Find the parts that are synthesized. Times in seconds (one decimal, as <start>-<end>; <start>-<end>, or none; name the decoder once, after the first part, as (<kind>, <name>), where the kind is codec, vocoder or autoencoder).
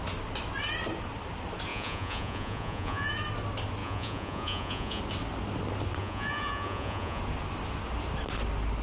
1.7-3.1 (vocoder, Vocos); 3.8-5.0; 6.0-7.2